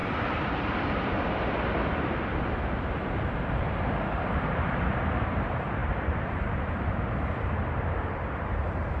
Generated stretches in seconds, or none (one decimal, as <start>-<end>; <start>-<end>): 3.5-9.0